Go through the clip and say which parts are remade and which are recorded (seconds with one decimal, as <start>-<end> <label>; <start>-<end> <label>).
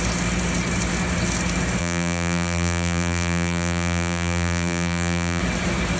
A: 0.0-1.8 recorded; 1.8-5.4 remade; 5.4-6.0 recorded